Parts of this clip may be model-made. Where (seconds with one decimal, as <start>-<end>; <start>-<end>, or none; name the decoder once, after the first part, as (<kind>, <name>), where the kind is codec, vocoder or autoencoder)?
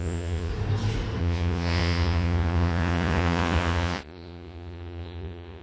0.0-0.5 (vocoder, Vocos); 1.2-5.6